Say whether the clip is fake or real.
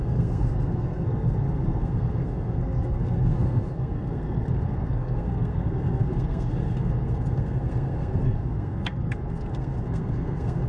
fake